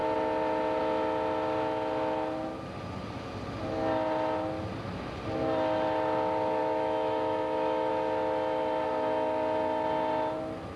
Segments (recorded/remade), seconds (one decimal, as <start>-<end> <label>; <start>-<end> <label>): 0.0-6.6 recorded; 6.6-7.9 remade; 7.9-10.8 recorded